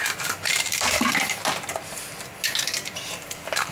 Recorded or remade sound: remade